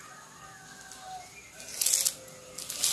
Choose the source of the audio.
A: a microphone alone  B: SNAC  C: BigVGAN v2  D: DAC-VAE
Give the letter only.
A